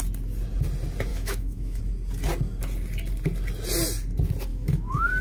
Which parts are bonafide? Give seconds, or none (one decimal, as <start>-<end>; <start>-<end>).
0.0-1.1; 1.8-4.5